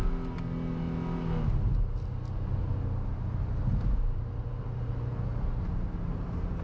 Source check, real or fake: real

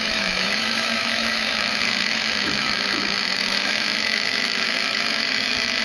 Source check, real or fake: fake